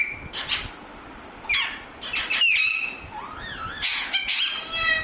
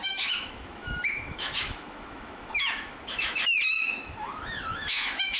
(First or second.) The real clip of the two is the first